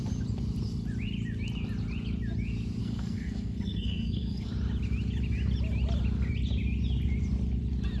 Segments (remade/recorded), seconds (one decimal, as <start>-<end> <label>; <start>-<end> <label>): 0.0-2.8 recorded; 2.8-4.5 remade; 4.5-8.0 recorded